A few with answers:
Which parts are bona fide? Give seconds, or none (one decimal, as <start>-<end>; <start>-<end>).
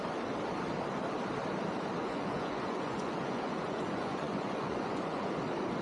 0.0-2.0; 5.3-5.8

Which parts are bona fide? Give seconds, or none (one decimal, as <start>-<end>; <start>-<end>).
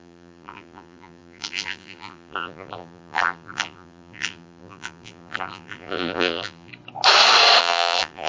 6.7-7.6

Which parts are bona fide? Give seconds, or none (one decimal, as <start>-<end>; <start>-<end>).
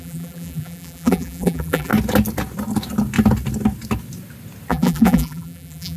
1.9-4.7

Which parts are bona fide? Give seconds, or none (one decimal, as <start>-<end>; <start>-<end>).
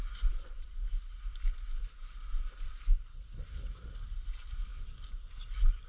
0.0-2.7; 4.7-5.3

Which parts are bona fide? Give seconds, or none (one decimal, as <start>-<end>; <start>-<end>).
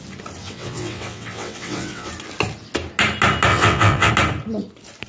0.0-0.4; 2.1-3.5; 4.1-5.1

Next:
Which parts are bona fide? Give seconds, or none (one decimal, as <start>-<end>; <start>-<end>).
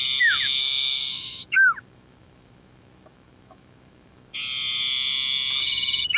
0.0-0.6; 4.3-6.2